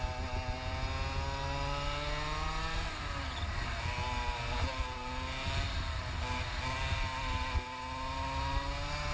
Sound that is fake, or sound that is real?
real